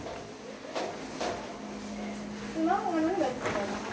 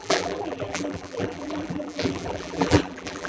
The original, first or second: first